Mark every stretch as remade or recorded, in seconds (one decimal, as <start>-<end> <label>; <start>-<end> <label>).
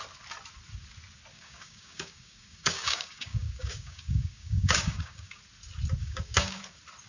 0.0-1.3 recorded; 1.3-5.4 remade; 5.4-6.0 recorded; 6.0-6.6 remade; 6.6-7.1 recorded